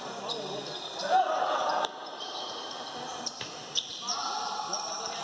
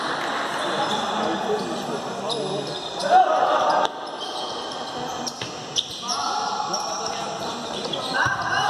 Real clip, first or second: second